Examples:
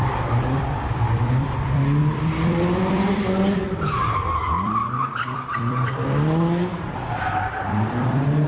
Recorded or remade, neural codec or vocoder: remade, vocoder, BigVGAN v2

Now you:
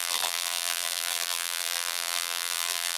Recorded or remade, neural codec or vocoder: remade, vocoder, BigVGAN v2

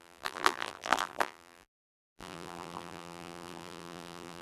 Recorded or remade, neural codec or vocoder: remade, vocoder, BigVGAN v2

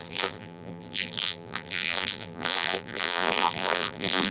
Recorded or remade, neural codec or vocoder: remade, vocoder, BigVGAN v2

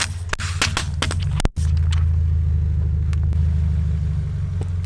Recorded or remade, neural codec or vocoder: recorded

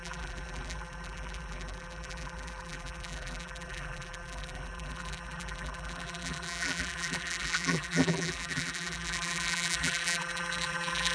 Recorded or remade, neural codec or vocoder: remade, vocoder, BigVGAN v2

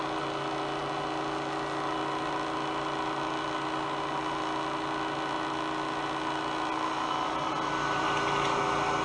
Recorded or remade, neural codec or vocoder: recorded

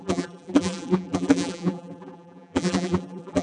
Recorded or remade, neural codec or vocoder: remade, vocoder, BigVGAN v2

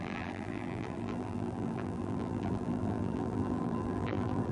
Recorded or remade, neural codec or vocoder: remade, vocoder, BigVGAN v2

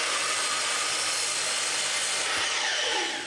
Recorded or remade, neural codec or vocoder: recorded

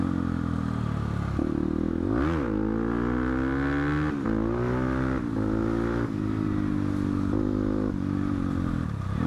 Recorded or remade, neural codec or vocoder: recorded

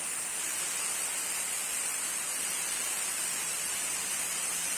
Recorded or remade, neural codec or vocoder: remade, vocoder, BigVGAN v2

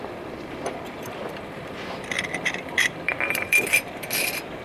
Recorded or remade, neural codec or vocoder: remade, vocoder, BigVGAN v2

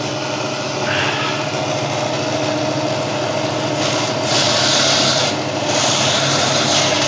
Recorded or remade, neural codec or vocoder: recorded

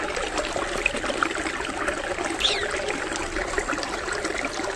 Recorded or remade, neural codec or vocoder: recorded